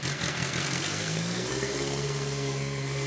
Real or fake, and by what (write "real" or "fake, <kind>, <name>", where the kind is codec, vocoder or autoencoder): fake, codec, SNAC